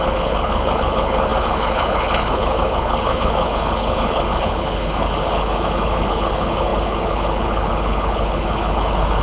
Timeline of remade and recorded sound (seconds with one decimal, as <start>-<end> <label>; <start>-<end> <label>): 0.0-9.2 remade